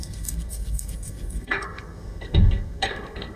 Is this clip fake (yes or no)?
yes